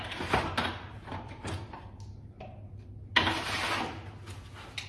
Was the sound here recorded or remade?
recorded